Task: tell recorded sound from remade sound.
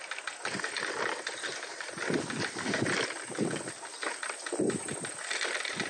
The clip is recorded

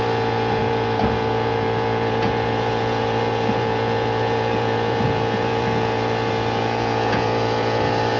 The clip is remade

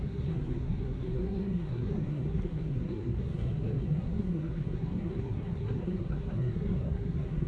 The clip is remade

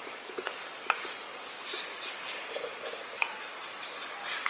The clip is recorded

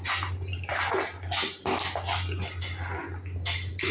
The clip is recorded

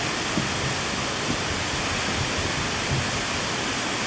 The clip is recorded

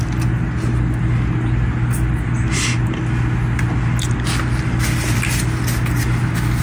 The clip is recorded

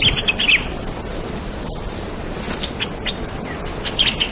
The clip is recorded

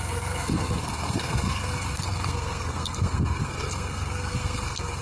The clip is remade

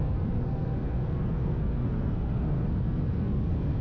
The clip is remade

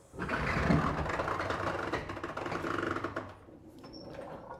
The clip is recorded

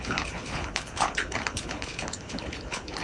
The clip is remade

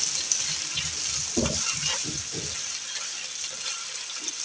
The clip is recorded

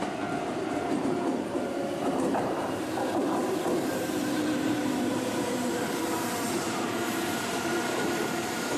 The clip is remade